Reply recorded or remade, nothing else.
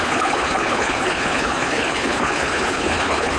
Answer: remade